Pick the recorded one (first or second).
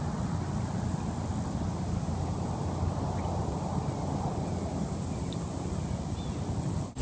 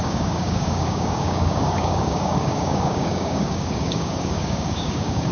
first